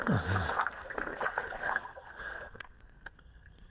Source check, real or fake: fake